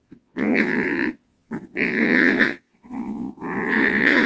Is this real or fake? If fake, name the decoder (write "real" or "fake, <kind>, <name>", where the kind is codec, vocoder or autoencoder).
fake, vocoder, Vocos